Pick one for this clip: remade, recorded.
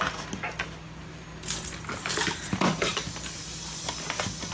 recorded